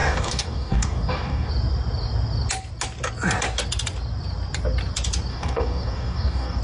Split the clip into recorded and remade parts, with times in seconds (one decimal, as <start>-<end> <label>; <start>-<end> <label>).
0.0-1.5 remade; 1.5-5.3 recorded; 5.3-6.6 remade